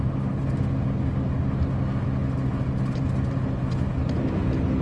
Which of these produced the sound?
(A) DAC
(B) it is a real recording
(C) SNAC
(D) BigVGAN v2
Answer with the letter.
B